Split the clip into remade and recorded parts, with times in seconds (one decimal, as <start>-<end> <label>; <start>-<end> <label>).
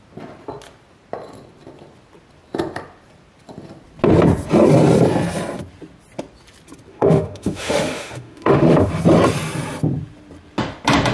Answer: 0.0-6.9 recorded; 6.9-8.9 remade; 8.9-11.1 recorded